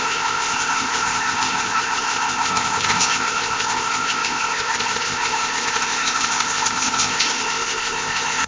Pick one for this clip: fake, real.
fake